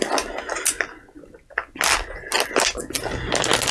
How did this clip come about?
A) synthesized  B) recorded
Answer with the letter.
B